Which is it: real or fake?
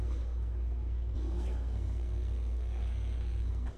fake